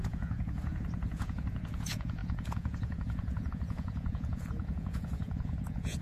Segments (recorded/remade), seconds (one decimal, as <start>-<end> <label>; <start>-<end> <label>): 0.0-6.0 remade